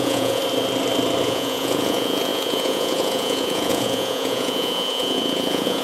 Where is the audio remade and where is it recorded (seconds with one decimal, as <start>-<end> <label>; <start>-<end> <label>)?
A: 0.0-0.4 remade; 0.4-1.2 recorded; 1.2-5.8 remade